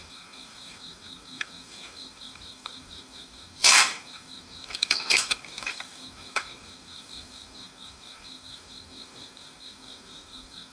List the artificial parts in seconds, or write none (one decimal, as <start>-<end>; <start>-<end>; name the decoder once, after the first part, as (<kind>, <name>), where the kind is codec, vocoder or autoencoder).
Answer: 0.0-10.7 (codec, DAC)